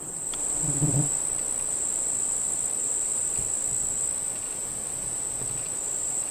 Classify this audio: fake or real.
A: real